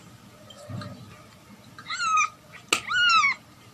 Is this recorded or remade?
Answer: recorded